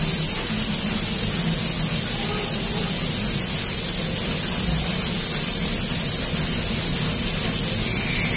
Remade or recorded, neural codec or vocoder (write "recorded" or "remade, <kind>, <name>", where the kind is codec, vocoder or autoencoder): recorded